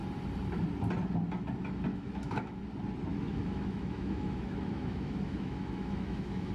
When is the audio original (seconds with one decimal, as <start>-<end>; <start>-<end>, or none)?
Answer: 0.0-1.9; 2.6-3.1